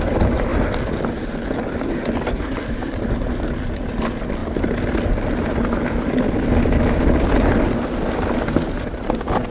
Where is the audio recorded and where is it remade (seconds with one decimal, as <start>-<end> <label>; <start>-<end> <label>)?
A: 0.0-9.5 recorded